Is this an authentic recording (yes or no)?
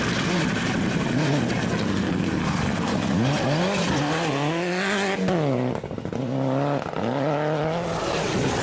yes